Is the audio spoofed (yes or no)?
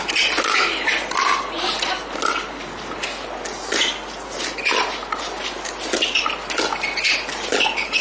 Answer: no